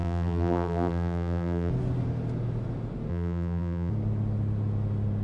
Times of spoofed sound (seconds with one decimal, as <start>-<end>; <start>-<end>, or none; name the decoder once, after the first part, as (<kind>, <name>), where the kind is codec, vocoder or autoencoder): 0.0-1.7 (vocoder, BigVGAN v2); 3.1-3.9